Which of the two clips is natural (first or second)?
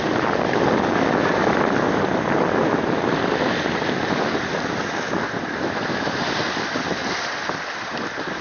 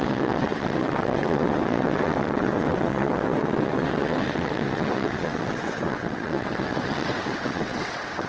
first